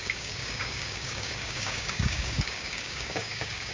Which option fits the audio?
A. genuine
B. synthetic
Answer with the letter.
B